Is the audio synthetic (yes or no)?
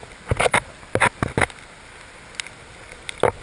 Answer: no